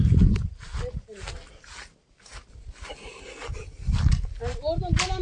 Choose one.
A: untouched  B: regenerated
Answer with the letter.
A